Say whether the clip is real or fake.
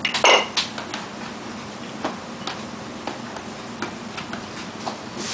real